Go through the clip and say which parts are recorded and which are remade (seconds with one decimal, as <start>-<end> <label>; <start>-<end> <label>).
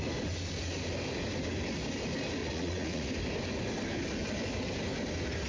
0.0-2.4 recorded; 2.4-3.1 remade; 3.1-5.5 recorded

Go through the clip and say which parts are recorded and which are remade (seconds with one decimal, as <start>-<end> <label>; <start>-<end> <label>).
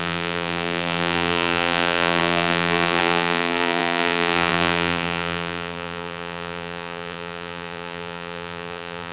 0.0-9.1 remade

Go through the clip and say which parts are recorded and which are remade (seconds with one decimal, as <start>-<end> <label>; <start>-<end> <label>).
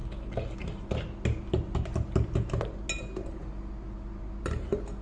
0.0-5.0 recorded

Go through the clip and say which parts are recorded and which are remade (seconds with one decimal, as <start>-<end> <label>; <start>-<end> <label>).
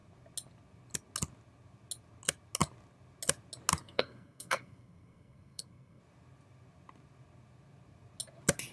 0.0-3.8 recorded; 3.8-6.0 remade; 6.0-8.7 recorded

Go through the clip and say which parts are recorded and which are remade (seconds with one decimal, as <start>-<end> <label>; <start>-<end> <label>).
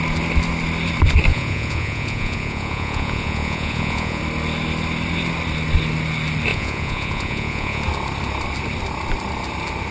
0.0-1.3 recorded; 1.3-4.2 remade; 4.2-6.5 recorded; 6.5-7.8 remade; 7.8-9.9 recorded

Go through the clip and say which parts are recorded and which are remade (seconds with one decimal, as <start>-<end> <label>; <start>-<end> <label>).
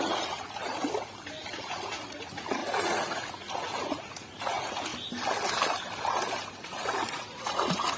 0.0-0.8 remade; 0.8-1.5 recorded; 1.5-4.9 remade; 4.9-6.5 recorded; 6.5-8.0 remade